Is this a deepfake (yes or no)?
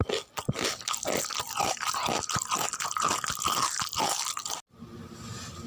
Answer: no